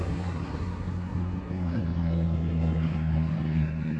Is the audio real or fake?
fake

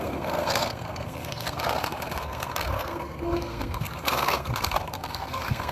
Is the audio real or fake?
fake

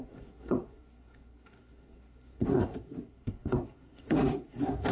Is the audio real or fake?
fake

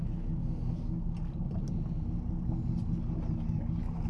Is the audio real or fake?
real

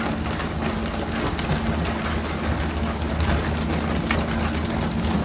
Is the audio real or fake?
real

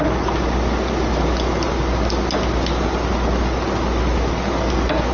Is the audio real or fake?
real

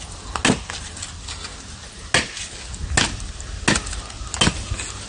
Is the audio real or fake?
real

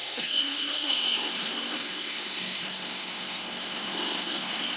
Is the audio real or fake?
fake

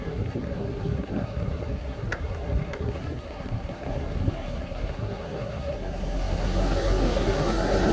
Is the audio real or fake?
fake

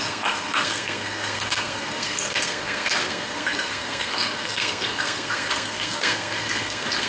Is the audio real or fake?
fake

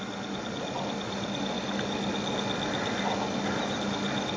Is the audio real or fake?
real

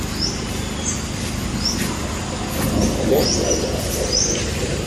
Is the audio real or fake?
real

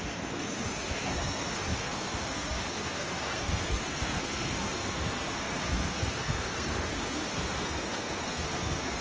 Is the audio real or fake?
fake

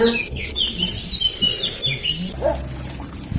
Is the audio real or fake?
real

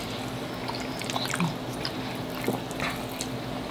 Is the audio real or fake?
real